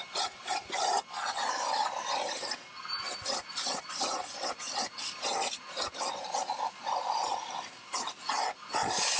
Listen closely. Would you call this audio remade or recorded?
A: recorded